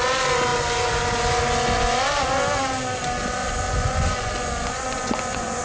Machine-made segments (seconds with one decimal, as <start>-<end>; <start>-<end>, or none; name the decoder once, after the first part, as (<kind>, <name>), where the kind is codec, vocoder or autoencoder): 3.4-5.6 (vocoder, Vocos)